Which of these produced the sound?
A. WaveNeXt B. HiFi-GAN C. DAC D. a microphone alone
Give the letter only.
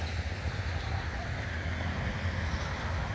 D